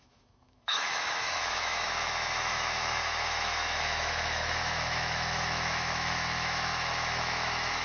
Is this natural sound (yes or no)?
no